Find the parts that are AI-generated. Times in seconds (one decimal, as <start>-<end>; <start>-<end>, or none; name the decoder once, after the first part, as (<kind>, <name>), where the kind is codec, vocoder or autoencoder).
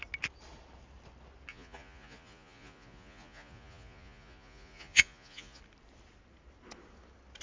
1.5-5.6 (vocoder, Vocos)